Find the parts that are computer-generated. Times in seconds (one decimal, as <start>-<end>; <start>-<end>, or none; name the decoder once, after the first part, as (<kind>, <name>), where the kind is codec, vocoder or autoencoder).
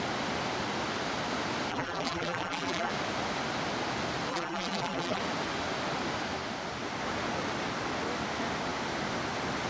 1.7-2.9 (vocoder, BigVGAN v2); 4.3-5.2